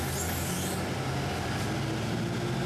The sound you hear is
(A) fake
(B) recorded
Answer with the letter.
B